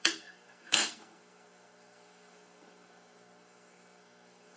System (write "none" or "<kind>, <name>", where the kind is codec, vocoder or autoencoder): codec, SNAC